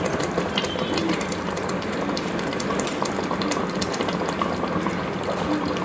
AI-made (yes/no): no